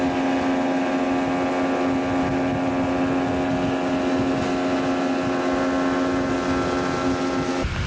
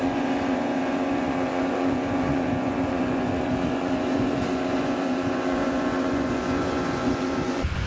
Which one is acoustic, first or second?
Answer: first